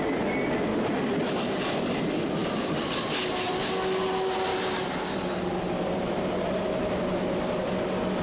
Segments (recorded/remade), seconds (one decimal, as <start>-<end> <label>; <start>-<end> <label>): 0.0-2.4 recorded; 2.4-3.6 remade; 3.6-4.5 recorded; 4.5-7.7 remade; 7.7-8.2 recorded